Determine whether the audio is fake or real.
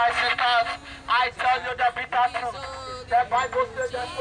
real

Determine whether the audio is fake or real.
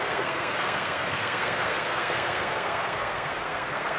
fake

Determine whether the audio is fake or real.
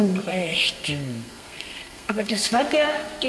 fake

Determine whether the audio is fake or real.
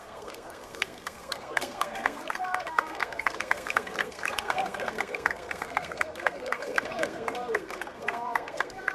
fake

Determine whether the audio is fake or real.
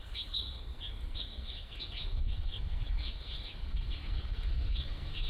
fake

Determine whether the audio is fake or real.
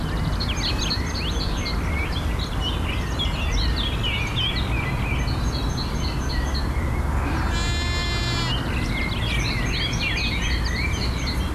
real